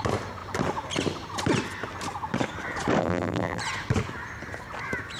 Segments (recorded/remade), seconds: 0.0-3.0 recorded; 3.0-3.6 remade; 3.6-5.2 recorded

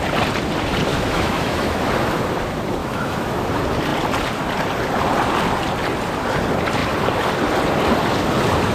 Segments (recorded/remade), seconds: 0.0-0.9 recorded; 0.9-1.9 remade; 1.9-2.8 recorded; 2.8-3.4 remade; 3.4-8.7 recorded

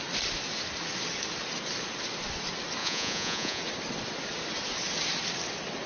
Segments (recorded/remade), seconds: 0.0-2.8 recorded; 2.8-3.6 remade; 3.6-5.9 recorded

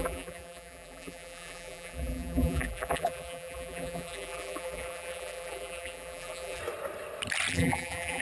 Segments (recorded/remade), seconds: 0.0-6.6 remade; 6.6-7.5 recorded; 7.5-8.2 remade